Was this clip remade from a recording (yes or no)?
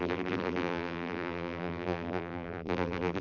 yes